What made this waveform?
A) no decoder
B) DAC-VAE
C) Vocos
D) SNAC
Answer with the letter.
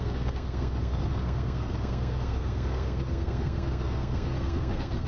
D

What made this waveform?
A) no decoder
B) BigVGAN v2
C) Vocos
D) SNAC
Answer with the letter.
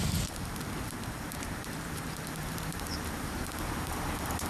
B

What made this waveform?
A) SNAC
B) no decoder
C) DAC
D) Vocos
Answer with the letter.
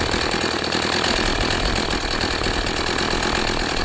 B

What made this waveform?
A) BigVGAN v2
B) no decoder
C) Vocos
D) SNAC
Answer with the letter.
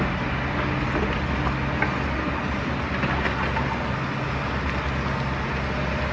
B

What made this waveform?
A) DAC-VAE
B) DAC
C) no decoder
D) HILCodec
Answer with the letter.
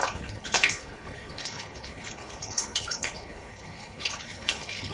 D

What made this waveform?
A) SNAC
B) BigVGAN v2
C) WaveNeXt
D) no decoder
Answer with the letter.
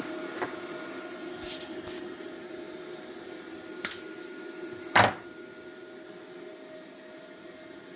D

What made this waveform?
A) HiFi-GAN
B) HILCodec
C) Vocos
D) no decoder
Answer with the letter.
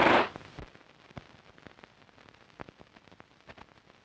D